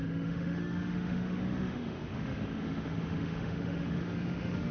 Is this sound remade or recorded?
remade